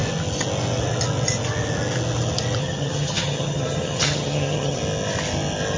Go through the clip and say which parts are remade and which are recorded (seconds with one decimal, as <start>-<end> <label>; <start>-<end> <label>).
0.0-2.6 recorded; 2.6-4.8 remade; 4.8-5.8 recorded